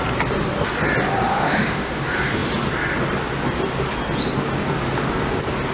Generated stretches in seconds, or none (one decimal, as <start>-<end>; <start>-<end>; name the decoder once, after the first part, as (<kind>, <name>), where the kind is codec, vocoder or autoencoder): 1.3-2.0 (autoencoder, DAC-VAE)